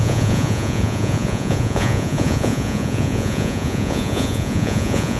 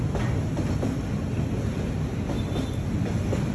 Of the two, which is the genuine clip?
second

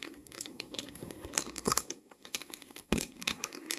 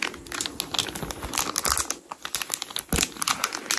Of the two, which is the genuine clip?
second